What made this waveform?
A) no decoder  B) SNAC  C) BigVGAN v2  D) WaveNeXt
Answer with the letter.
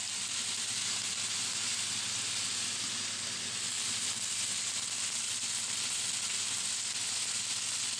A